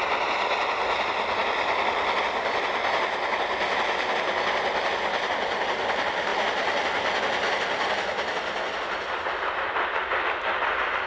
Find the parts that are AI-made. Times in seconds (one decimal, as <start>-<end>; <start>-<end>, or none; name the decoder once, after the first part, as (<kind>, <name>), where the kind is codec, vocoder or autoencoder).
none